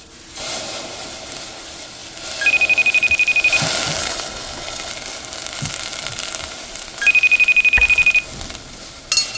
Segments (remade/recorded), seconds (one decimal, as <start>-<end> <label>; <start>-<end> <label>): 0.0-4.0 recorded; 4.0-4.9 remade; 4.9-9.4 recorded